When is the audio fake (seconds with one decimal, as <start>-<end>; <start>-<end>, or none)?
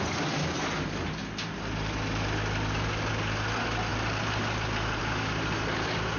none